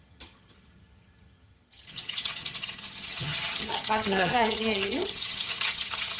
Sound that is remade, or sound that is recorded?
remade